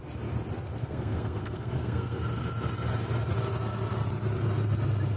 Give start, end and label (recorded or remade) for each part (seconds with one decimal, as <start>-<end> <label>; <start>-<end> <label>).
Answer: 0.0-0.8 recorded; 0.8-2.2 remade; 2.2-5.2 recorded